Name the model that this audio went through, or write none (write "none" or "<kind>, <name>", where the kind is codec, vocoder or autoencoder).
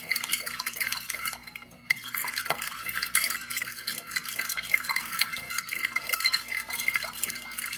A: codec, SNAC